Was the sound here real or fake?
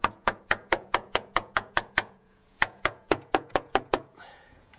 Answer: fake